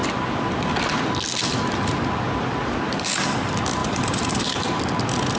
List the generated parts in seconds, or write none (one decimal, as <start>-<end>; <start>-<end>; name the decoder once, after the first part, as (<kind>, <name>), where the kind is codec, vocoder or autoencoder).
3.8-4.8 (vocoder, BigVGAN v2)